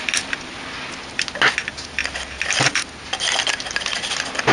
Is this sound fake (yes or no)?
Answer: no